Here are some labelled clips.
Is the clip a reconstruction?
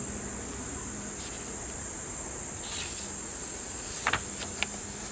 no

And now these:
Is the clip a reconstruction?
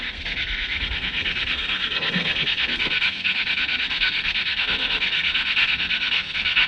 yes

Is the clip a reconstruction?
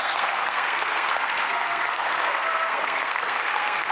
yes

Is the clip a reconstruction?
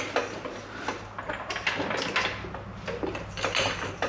no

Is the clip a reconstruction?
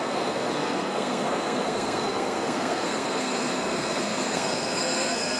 yes